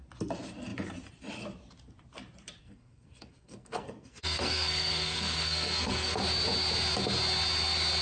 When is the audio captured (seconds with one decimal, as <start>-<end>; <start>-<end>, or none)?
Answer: 0.0-2.6; 6.2-8.0